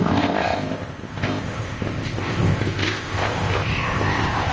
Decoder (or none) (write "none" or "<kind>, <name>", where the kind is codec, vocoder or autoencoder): codec, ZipCodec